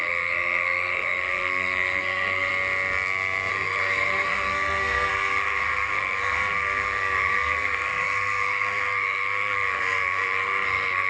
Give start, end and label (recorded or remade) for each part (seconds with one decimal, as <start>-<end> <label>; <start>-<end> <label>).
0.0-2.5 remade; 2.5-3.5 recorded; 3.5-11.1 remade